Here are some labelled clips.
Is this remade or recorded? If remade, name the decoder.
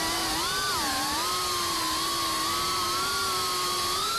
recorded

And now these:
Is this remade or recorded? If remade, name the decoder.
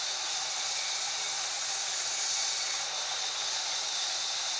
recorded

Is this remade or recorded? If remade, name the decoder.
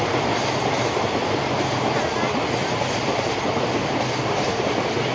recorded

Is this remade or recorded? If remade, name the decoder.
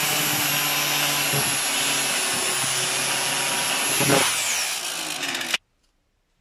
recorded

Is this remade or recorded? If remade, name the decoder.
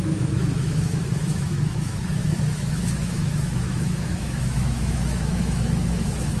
remade, autoencoder, DAC-VAE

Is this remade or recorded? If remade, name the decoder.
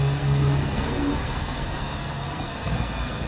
remade, codec, SNAC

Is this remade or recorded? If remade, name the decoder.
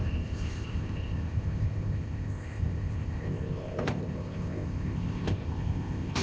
remade, codec, ZipCodec